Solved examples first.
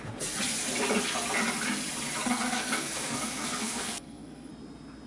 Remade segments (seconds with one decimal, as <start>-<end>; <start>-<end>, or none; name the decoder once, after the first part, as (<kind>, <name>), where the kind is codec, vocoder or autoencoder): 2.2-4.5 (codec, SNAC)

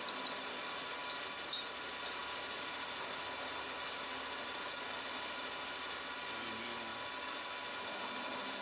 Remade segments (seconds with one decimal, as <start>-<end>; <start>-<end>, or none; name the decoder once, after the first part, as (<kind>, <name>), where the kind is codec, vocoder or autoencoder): none

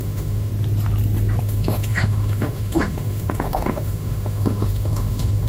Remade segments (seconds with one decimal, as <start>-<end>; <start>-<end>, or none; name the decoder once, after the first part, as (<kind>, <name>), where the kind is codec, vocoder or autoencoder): 0.0-0.5 (autoencoder, DAC-VAE); 1.4-5.5

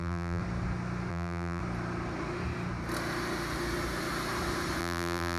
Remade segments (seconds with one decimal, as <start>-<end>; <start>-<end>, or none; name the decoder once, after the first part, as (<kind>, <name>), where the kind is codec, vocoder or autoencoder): 0.0-0.4 (vocoder, BigVGAN v2); 1.1-1.6; 4.8-5.4

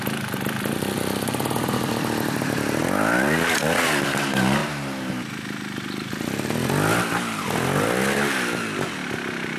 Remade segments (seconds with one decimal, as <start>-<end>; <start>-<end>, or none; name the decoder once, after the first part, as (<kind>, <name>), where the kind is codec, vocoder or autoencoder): none